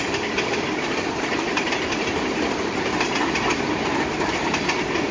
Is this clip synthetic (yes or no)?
yes